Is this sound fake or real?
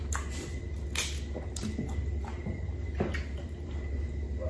real